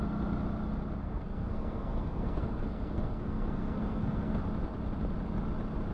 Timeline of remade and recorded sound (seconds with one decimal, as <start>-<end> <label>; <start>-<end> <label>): 0.0-1.0 recorded; 1.0-4.4 remade; 4.4-5.9 recorded